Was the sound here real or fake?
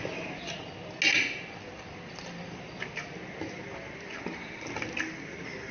real